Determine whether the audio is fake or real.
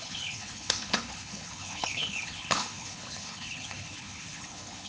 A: fake